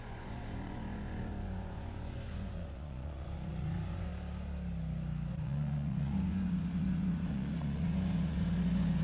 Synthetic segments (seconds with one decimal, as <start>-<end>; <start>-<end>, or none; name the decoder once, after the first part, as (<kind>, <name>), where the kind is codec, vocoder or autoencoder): 0.0-4.1 (vocoder, Vocos); 5.3-9.0